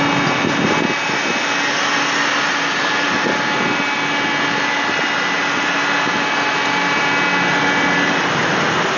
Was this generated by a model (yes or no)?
no